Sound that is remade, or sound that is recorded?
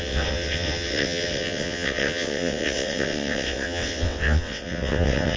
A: remade